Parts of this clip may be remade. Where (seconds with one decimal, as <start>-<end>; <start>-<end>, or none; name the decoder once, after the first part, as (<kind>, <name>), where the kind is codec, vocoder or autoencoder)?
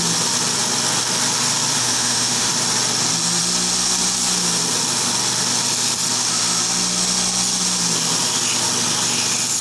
1.8-2.5 (autoencoder, DAC-VAE)